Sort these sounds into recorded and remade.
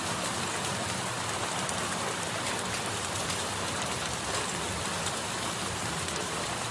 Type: remade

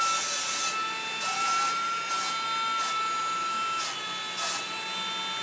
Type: recorded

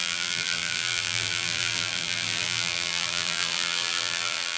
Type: remade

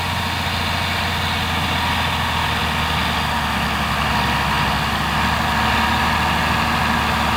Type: recorded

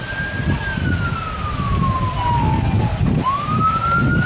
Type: recorded